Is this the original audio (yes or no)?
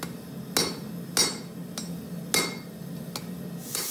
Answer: yes